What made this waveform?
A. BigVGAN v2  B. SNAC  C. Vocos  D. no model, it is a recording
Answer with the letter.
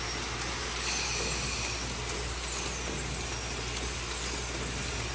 D